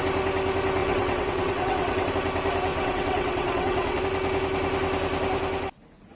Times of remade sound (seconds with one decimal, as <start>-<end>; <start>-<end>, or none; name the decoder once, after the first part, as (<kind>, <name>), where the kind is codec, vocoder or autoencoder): 0.8-2.1 (vocoder, WaveNeXt); 2.7-4.0